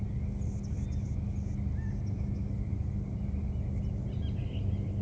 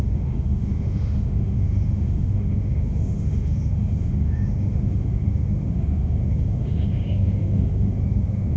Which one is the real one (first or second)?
first